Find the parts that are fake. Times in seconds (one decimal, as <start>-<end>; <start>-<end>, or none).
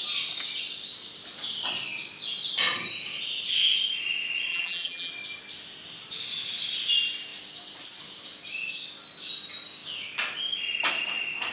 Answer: 4.5-5.1